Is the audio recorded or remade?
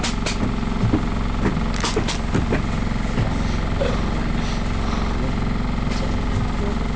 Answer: recorded